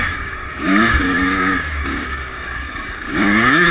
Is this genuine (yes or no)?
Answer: no